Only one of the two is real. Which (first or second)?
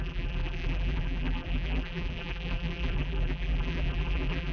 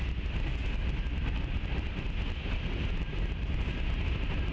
second